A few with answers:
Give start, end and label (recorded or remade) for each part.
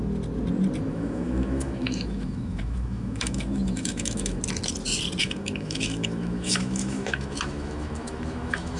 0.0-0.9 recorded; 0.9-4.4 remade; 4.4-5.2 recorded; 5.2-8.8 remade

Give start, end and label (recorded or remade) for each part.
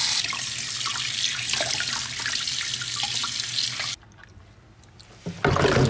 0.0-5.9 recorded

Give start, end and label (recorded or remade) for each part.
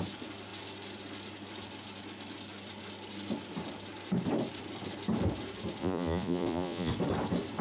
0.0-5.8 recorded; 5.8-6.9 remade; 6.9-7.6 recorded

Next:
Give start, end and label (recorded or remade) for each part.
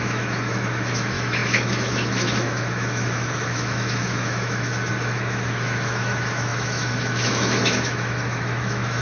0.0-9.0 remade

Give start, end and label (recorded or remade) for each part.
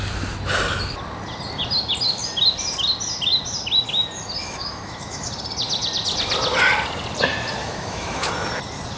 0.0-4.4 recorded; 4.4-5.3 remade; 5.3-7.6 recorded; 7.6-8.3 remade; 8.3-9.0 recorded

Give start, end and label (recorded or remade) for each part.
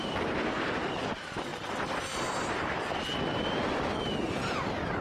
0.0-1.5 remade; 1.5-4.5 recorded; 4.5-5.0 remade